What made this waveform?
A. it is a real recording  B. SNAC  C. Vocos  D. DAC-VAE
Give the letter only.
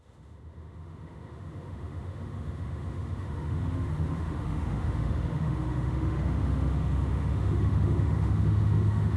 D